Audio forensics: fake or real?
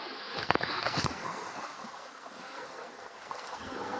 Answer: fake